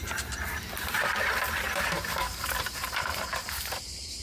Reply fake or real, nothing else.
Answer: fake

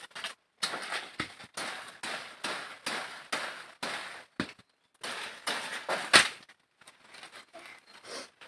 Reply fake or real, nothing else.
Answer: real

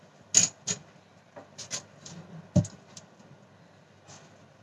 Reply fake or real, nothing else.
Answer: real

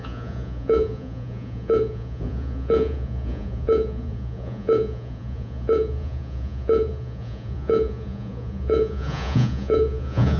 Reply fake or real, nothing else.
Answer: fake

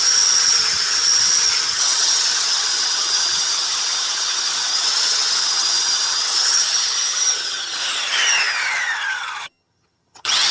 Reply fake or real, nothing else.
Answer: fake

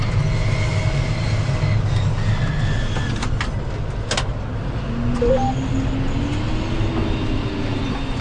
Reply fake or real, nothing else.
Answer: real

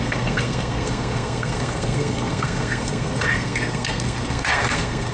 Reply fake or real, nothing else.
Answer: fake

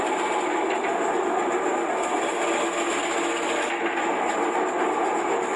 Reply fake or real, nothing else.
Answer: real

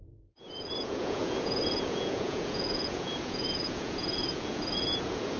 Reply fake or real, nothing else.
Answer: fake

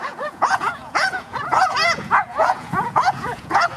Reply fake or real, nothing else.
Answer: fake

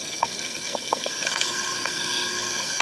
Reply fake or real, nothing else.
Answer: fake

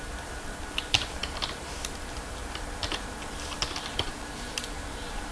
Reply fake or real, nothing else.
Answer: fake